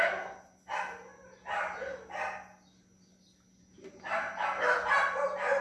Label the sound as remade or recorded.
recorded